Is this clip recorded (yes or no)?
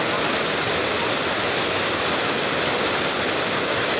yes